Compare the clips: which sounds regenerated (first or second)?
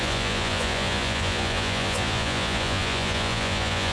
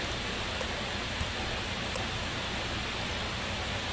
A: first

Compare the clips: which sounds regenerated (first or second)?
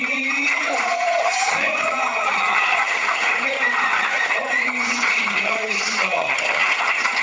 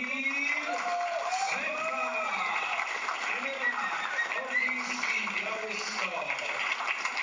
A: first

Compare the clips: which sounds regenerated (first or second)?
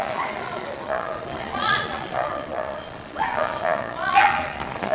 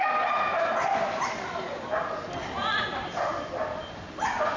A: first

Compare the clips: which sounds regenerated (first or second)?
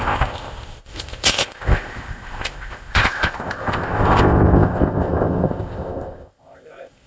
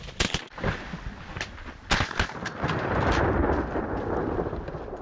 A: first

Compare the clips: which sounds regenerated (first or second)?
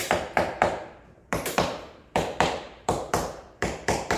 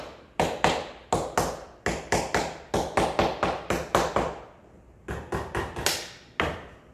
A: first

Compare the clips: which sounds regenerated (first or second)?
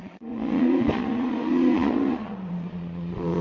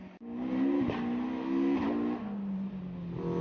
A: first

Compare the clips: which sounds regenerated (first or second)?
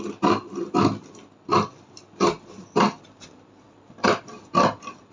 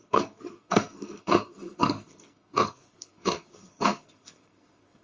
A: second